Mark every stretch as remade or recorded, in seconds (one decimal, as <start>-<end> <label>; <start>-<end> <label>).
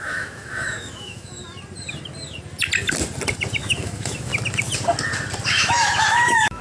0.0-1.4 remade; 1.4-3.6 recorded; 3.6-4.3 remade; 4.3-5.5 recorded; 5.5-6.6 remade